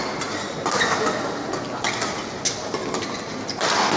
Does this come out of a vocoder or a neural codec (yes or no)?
no